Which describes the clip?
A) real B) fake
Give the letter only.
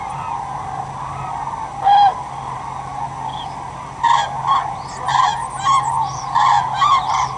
A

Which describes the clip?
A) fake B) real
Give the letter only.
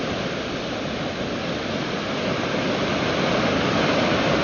B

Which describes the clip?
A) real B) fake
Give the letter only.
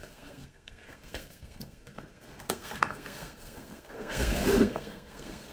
B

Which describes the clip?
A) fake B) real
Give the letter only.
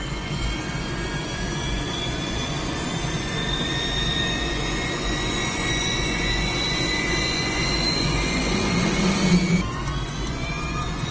A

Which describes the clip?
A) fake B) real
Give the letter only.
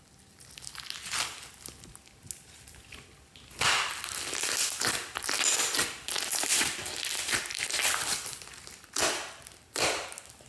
B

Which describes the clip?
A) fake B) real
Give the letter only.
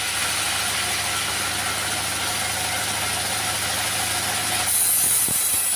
B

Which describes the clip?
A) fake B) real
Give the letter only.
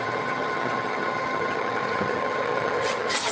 A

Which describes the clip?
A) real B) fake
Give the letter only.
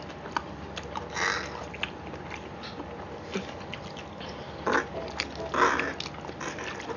A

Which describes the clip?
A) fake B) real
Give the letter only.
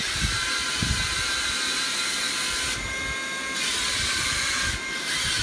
B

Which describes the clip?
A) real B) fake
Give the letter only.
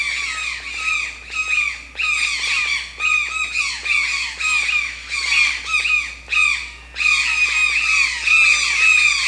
A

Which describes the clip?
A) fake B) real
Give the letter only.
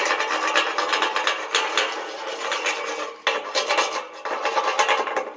B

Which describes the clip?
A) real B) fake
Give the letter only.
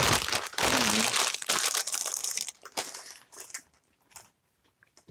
B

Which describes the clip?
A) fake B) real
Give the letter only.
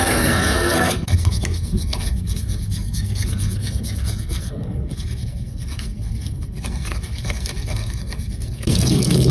A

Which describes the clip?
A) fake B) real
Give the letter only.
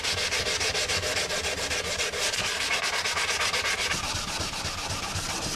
B